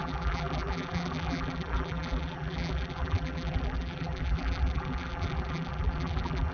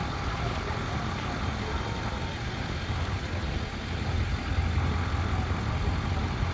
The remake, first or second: first